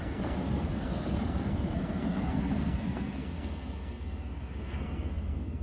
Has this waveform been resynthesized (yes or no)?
yes